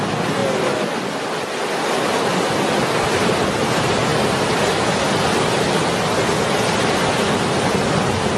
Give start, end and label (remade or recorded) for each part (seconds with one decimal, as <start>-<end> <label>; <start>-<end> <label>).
0.0-8.4 recorded